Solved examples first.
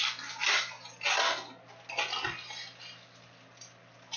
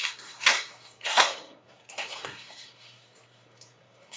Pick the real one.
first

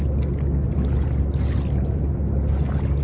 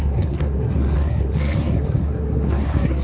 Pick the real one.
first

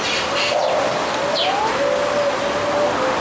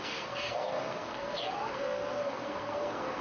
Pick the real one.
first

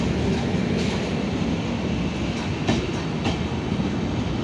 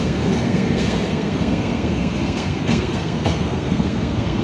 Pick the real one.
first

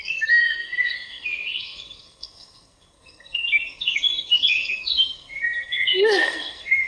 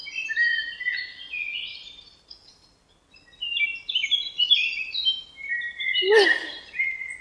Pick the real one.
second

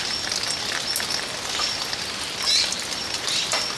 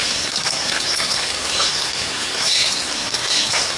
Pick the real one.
first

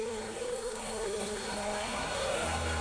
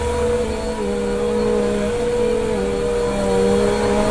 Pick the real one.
second